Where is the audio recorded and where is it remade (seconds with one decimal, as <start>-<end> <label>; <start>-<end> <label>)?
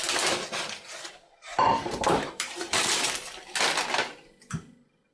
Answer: 0.0-1.5 recorded; 1.5-3.6 remade; 3.6-5.1 recorded